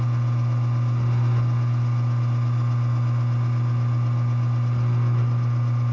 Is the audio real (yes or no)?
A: yes